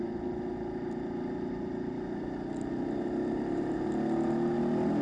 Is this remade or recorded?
recorded